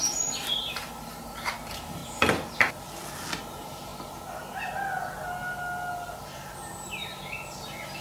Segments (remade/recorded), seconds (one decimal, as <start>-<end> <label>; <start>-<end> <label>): 0.0-2.0 remade; 2.0-3.4 recorded; 3.4-3.9 remade; 3.9-6.5 recorded; 6.5-7.1 remade; 7.1-7.6 recorded; 7.6-8.0 remade